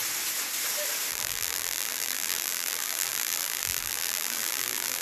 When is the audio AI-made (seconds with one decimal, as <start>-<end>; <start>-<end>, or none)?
1.1-5.0

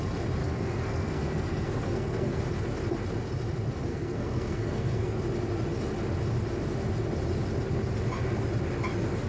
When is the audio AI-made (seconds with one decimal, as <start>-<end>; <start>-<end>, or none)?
0.4-2.4; 3.9-5.2